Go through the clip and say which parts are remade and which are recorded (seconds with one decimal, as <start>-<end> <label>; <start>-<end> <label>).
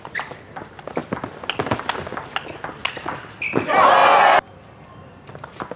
0.0-5.8 recorded